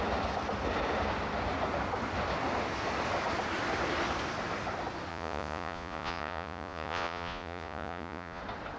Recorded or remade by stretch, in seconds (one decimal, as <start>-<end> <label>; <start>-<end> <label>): 0.0-5.1 recorded; 5.1-8.4 remade; 8.4-8.8 recorded